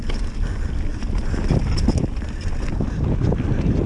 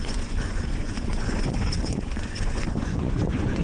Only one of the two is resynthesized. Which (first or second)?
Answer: second